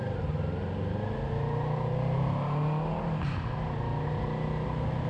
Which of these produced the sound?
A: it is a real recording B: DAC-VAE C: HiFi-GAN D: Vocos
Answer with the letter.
A